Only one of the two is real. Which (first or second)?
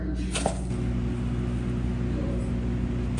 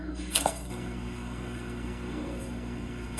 first